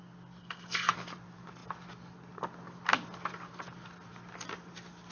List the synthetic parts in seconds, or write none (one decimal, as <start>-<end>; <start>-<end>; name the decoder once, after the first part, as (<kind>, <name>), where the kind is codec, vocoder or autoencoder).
0.4-0.9 (codec, SNAC)